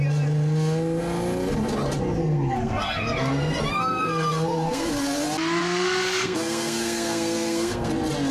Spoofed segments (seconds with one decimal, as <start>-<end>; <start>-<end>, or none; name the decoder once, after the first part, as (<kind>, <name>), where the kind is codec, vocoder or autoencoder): 2.2-4.9 (codec, SNAC); 5.6-7.9